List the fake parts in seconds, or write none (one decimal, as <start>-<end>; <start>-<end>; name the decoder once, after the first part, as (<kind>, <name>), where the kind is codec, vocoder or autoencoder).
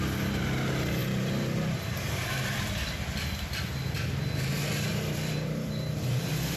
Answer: 1.0-3.9 (vocoder, BigVGAN v2); 4.9-5.8